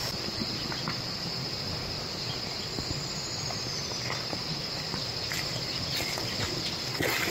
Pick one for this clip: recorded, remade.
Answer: recorded